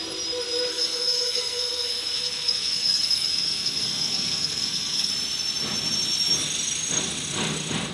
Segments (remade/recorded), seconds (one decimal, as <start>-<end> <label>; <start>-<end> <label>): 0.0-0.7 recorded; 0.7-5.1 remade; 5.1-7.9 recorded